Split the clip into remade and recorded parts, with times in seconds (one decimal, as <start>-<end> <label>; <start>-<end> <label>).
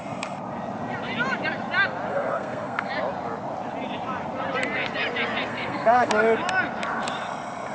0.0-2.1 recorded; 2.1-2.9 remade; 2.9-5.5 recorded; 5.5-6.1 remade; 6.1-7.7 recorded